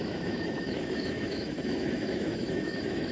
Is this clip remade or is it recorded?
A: remade